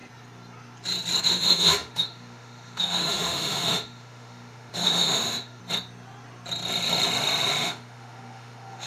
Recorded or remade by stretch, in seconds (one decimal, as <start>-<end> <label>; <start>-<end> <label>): 0.0-1.2 recorded; 1.2-5.6 remade; 5.6-7.5 recorded; 7.5-8.9 remade